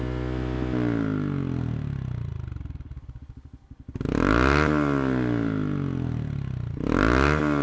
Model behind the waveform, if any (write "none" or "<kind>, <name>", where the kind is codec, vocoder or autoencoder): none